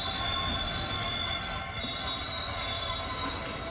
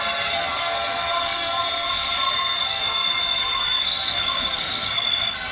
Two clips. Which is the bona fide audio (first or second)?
first